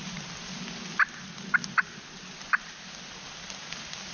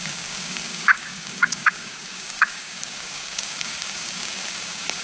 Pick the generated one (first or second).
second